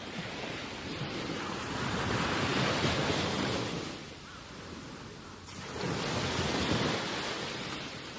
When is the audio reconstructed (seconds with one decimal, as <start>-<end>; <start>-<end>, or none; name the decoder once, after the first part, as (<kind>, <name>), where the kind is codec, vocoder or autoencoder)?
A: 0.0-4.0 (vocoder, BigVGAN v2); 7.6-8.2